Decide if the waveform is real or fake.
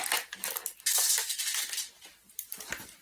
real